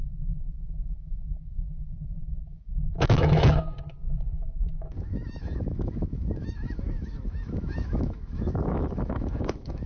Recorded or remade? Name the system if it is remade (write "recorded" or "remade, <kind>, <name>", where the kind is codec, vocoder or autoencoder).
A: remade, autoencoder, DAC-VAE